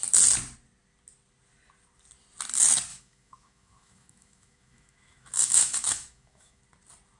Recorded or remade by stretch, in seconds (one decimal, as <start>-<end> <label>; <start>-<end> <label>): 0.0-2.9 recorded; 2.9-6.6 remade; 6.6-7.2 recorded